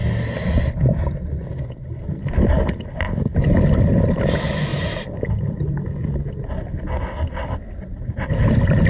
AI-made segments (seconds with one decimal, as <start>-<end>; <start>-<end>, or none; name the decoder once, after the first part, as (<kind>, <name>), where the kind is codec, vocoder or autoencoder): none